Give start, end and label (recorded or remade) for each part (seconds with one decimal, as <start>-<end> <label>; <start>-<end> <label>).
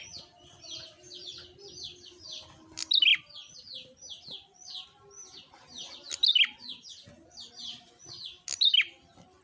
0.0-9.4 recorded